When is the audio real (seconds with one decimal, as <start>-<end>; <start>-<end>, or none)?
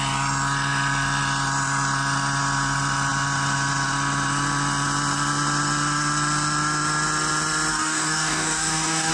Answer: 0.0-7.7